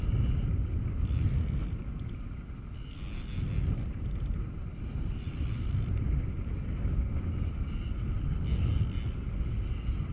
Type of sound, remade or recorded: recorded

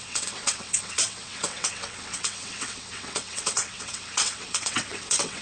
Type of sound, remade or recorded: remade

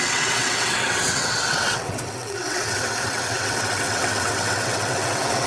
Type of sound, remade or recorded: remade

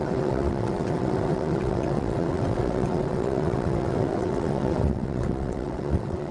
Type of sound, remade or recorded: remade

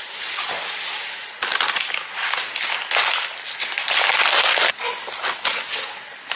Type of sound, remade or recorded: recorded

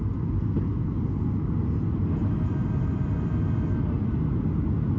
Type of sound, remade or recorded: recorded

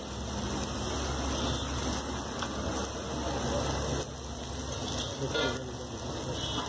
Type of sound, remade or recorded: recorded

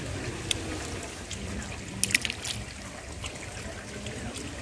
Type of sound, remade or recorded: recorded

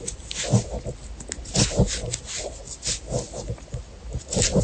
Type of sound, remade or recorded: recorded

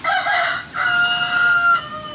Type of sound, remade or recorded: recorded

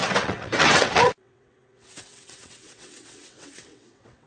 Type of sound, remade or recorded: remade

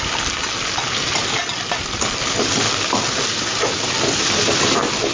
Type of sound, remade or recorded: recorded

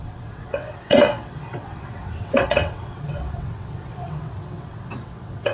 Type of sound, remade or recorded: remade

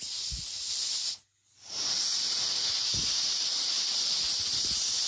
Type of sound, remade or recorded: recorded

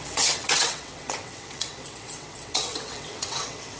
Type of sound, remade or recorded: remade